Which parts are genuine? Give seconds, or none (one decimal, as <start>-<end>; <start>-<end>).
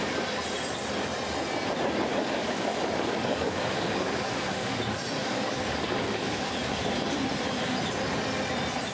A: 0.0-2.1; 4.8-5.2; 6.5-8.9